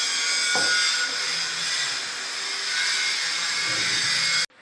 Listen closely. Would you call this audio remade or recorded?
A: recorded